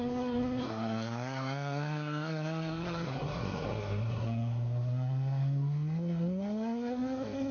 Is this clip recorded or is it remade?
remade